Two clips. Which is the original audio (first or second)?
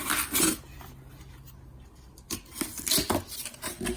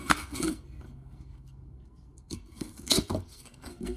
first